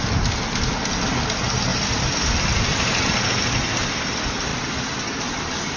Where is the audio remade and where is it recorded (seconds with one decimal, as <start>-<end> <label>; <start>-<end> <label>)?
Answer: 0.0-4.5 recorded; 4.5-5.8 remade